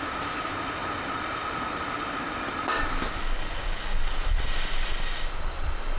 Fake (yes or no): no